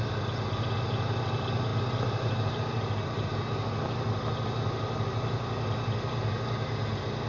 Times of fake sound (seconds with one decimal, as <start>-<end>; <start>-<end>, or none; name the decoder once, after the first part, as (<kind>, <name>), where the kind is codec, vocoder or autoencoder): none